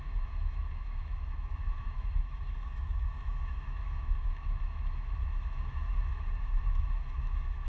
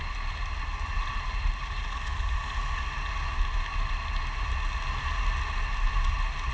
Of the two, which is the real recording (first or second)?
second